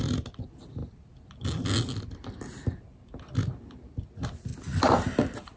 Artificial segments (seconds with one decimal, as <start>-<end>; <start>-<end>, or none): none